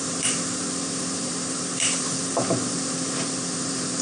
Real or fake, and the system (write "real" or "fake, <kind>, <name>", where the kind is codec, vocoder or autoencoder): fake, vocoder, BigVGAN v2